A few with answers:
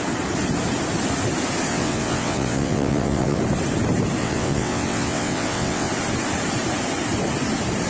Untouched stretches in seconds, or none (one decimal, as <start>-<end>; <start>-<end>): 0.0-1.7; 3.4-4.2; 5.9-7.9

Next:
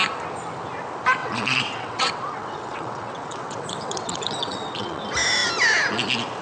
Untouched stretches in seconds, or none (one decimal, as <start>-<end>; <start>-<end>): 0.0-1.2; 5.0-6.4

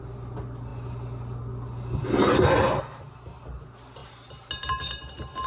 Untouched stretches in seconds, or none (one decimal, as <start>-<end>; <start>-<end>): 0.0-5.5